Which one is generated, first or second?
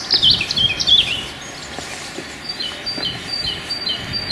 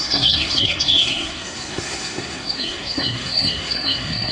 second